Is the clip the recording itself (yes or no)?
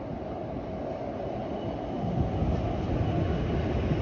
yes